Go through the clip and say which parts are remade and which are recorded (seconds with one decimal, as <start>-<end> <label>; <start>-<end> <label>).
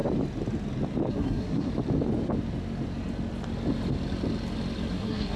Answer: 0.0-1.1 recorded; 1.1-1.7 remade; 1.7-4.9 recorded; 4.9-5.4 remade